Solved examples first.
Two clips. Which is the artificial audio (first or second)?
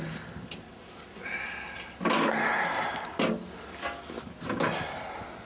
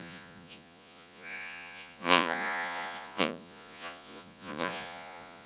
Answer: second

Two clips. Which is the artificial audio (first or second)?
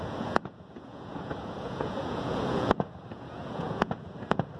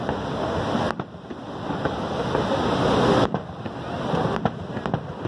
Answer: first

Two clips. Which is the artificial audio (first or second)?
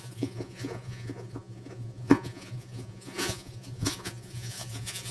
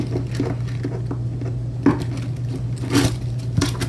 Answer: first